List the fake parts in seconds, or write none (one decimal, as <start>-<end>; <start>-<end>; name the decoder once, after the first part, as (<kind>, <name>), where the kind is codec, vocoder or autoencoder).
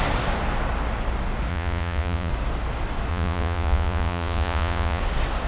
1.5-2.3 (vocoder, Vocos); 3.1-5.0